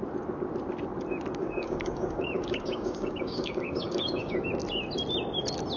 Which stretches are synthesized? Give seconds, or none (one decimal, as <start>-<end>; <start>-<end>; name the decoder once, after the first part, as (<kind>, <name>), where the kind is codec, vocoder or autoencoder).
1.4-4.5 (codec, DAC)